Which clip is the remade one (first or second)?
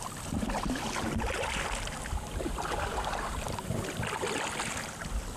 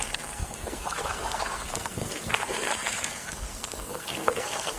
second